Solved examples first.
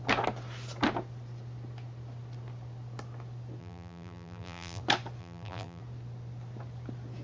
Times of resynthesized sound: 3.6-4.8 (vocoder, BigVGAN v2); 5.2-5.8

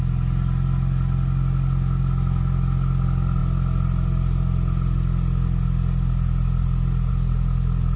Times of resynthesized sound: none

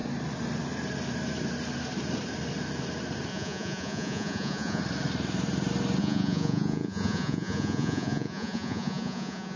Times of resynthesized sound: 3.3-4.8 (vocoder, Vocos); 6.0-9.6

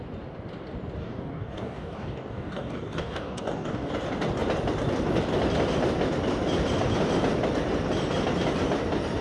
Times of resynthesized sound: 1.0-3.9 (codec, DAC)